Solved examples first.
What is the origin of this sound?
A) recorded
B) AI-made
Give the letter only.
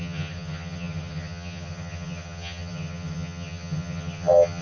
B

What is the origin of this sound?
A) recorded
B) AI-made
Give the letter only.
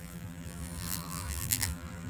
B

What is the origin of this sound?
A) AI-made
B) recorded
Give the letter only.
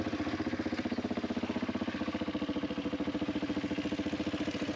B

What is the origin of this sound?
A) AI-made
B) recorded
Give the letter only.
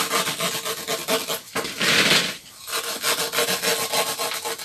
B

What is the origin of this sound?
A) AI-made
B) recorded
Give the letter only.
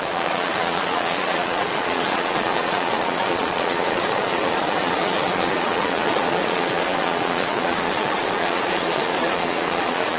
A